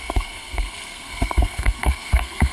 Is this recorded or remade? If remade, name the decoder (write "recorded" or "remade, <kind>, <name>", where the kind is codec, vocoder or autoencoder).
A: remade, codec, SNAC